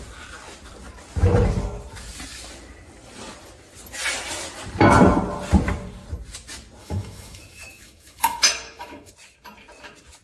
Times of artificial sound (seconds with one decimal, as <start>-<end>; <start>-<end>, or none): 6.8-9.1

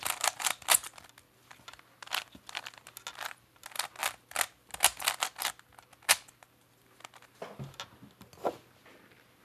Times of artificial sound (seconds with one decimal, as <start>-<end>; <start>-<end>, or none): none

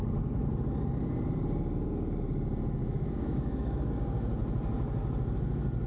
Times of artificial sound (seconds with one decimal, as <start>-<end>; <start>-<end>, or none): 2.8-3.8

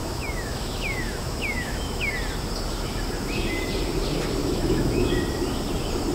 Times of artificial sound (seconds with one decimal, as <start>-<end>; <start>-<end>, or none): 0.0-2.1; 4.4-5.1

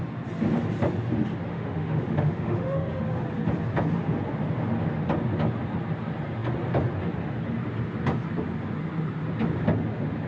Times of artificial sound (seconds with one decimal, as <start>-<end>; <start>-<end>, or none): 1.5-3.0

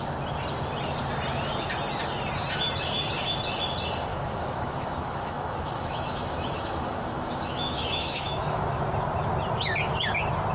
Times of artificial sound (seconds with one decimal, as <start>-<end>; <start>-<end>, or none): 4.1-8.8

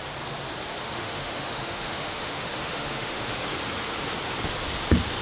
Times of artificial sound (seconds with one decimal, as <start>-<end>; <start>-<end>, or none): 0.8-3.3

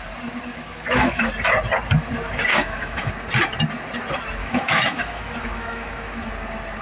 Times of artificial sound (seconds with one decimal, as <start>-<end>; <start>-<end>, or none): 0.5-1.3; 2.5-3.1; 4.4-6.3